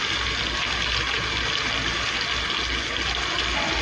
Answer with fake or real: real